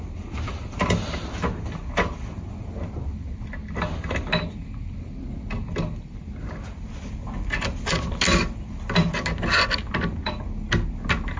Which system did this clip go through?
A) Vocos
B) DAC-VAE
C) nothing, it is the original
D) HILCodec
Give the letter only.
C